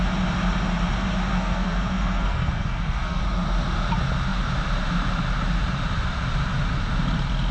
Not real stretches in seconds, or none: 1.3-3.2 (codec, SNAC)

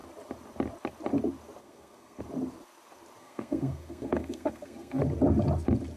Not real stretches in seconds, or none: 1.6-2.2 (codec, SNAC); 3.2-5.0

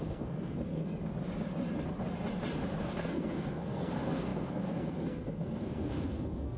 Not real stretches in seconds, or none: 0.0-0.9 (codec, SNAC); 2.8-6.6